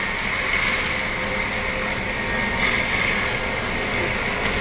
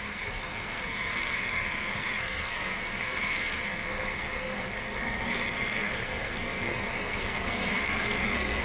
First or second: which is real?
first